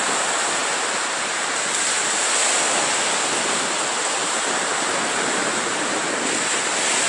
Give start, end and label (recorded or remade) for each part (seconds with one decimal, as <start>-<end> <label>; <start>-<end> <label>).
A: 0.0-4.2 recorded; 4.2-6.2 remade; 6.2-7.1 recorded